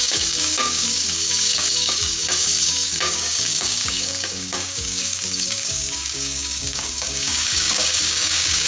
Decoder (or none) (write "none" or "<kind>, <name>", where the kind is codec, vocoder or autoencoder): codec, DAC